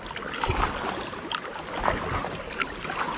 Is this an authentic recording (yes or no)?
no